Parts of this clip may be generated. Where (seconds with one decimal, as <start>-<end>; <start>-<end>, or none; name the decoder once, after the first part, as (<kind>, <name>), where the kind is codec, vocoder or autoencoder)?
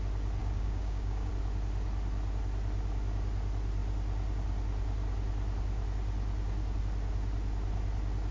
0.4-1.3 (codec, DAC)